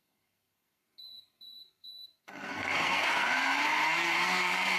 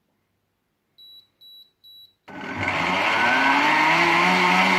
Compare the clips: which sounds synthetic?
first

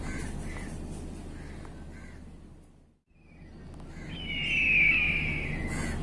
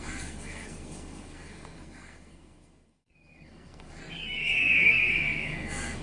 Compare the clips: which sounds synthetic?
second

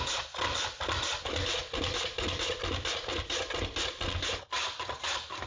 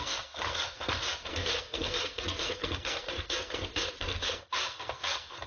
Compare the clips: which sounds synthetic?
second